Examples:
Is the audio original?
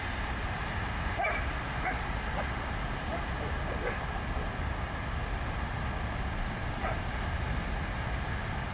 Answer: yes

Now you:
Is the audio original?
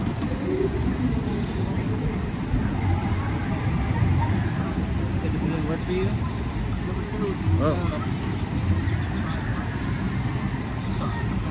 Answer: yes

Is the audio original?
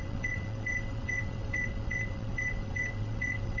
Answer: no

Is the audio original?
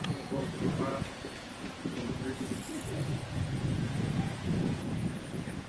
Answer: no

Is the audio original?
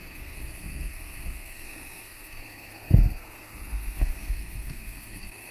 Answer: no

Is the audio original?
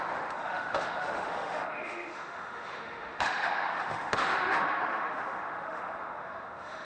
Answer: no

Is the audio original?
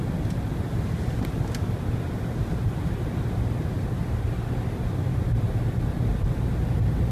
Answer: yes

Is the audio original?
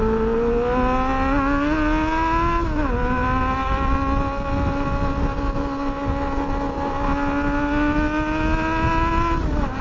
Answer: yes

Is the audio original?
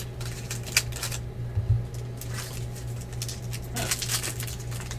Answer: yes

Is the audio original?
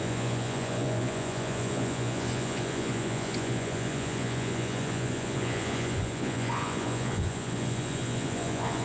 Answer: no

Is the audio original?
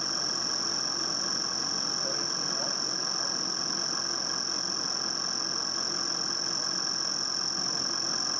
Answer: yes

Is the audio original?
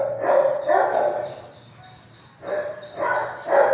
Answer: yes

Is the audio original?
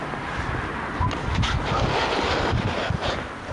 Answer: yes